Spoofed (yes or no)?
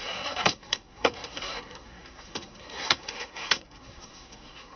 yes